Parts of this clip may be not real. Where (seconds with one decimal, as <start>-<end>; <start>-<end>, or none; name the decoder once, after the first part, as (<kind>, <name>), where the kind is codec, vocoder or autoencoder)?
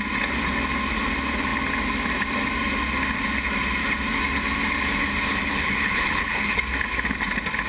5.3-6.6 (codec, HILCodec)